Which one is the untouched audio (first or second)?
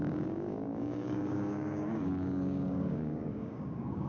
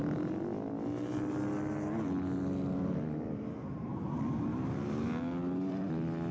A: second